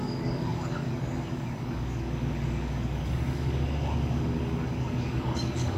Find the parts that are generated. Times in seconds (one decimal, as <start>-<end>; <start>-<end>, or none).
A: 0.0-5.8